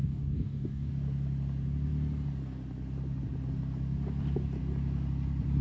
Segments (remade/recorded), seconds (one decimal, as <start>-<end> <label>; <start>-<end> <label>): 0.0-0.9 remade; 0.9-5.6 recorded